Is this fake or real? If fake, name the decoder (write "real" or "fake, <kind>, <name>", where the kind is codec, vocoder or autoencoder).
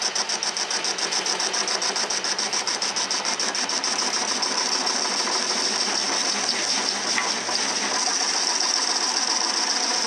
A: real